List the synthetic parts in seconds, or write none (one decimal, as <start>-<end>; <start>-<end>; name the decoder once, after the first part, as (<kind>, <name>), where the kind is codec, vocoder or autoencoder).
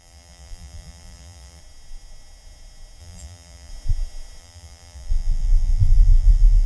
0.0-1.6 (vocoder, BigVGAN v2); 3.0-3.7; 4.4-6.7